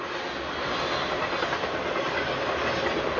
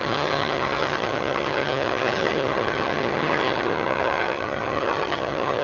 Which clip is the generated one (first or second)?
second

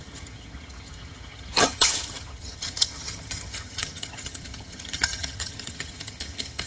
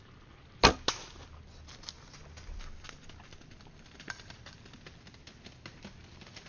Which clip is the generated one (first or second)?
first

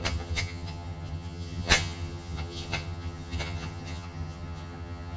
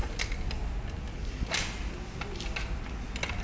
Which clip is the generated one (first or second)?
first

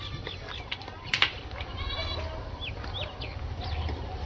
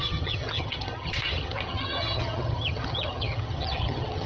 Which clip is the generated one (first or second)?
second